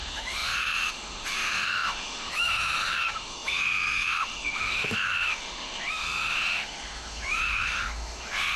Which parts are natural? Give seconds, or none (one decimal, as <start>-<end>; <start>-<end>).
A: none